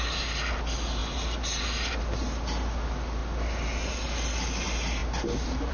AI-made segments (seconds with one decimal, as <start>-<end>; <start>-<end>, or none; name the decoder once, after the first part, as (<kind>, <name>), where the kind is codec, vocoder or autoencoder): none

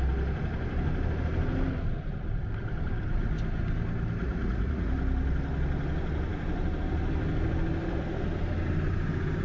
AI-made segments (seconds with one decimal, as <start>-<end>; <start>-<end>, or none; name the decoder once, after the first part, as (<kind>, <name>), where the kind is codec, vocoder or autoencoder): 4.2-4.9 (vocoder, Vocos)

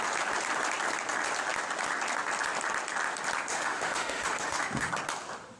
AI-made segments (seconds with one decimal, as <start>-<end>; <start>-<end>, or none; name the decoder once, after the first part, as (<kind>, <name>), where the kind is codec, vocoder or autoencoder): 3.5-4.9 (autoencoder, DAC-VAE)

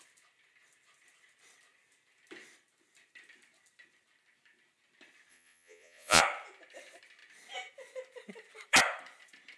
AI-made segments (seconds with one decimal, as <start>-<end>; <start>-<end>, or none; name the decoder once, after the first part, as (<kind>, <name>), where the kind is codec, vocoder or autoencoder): 5.3-6.2 (vocoder, Vocos)

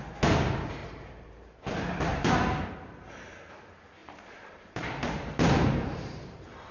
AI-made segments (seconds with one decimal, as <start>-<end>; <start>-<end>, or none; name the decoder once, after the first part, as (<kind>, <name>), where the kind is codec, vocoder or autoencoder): 0.8-1.6 (vocoder, BigVGAN v2); 2.1-2.8; 4.0-6.7

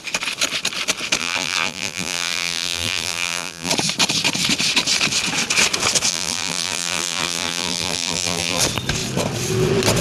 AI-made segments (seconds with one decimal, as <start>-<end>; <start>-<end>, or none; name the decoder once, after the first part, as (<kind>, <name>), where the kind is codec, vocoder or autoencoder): 1.2-3.7 (vocoder, BigVGAN v2); 6.1-8.6